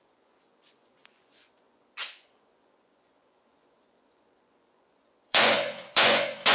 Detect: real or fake fake